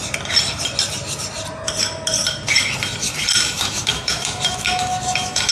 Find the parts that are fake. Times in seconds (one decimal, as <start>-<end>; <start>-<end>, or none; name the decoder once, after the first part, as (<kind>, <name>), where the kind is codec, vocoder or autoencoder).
3.3-5.5 (autoencoder, DAC-VAE)